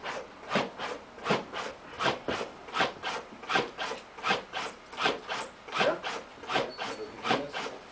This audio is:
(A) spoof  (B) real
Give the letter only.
B